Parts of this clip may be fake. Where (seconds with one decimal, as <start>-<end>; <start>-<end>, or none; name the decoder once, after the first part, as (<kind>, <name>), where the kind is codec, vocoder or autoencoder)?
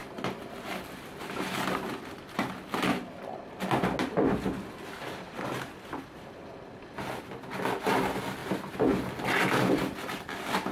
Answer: none